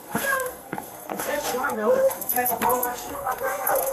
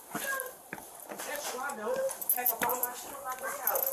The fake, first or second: first